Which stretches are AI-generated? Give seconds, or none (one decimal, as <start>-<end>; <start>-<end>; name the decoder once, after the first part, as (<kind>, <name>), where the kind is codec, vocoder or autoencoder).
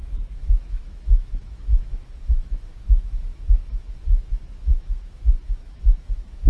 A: 0.0-6.5 (autoencoder, DAC-VAE)